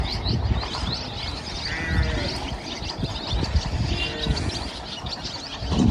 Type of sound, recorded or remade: recorded